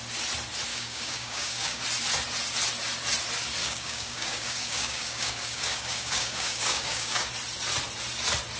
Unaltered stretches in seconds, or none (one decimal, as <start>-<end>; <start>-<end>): 0.0-0.7; 1.8-3.6; 7.3-8.6